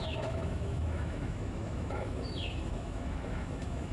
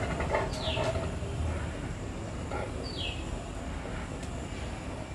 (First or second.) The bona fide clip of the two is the second